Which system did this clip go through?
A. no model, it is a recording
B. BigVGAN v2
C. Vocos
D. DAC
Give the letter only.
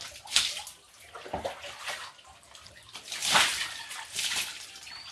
A